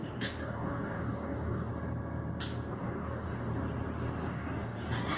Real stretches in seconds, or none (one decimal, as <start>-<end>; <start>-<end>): 1.7-2.7; 3.5-4.3